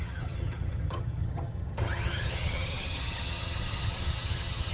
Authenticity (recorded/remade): remade